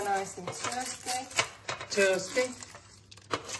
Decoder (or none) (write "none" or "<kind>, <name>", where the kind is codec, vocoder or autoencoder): none